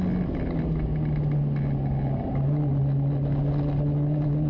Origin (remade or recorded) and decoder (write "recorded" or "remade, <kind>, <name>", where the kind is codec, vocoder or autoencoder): recorded